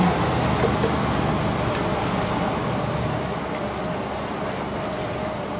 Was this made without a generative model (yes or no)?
yes